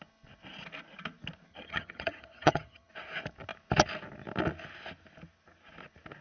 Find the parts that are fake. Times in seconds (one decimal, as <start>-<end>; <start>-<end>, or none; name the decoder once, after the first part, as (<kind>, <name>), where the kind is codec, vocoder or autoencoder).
1.5-2.9 (vocoder, HiFi-GAN)